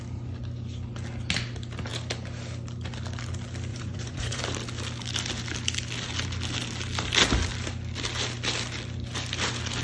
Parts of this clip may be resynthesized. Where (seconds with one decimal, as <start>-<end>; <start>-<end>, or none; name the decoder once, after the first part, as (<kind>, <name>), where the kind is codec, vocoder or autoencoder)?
3.7-4.4 (vocoder, Vocos)